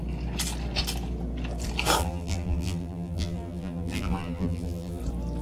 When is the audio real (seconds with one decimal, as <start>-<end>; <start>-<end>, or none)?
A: 0.0-2.0; 5.0-5.4